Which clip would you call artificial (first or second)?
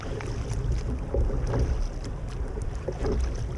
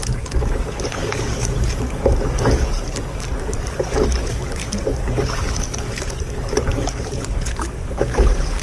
second